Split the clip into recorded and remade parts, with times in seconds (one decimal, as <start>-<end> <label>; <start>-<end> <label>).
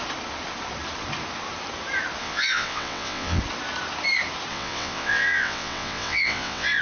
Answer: 0.0-2.2 recorded; 2.2-3.4 remade; 3.4-4.5 recorded; 4.5-6.8 remade